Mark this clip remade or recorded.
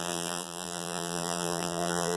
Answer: remade